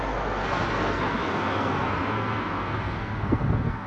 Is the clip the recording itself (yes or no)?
no